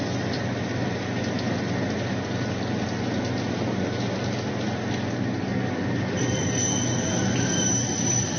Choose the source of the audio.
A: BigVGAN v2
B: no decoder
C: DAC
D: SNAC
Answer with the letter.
B